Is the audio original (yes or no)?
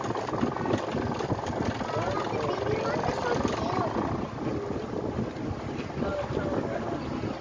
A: yes